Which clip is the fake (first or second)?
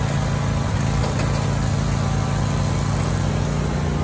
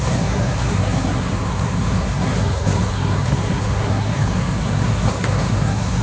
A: second